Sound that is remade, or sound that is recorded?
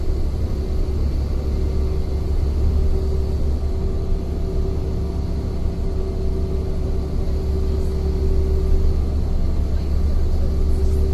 recorded